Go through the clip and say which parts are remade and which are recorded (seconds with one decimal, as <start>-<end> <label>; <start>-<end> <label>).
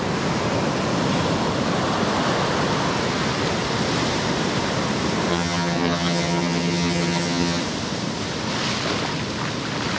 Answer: 0.0-5.3 recorded; 5.3-7.6 remade; 7.6-10.0 recorded